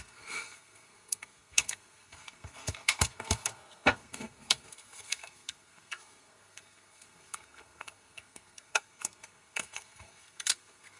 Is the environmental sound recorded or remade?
remade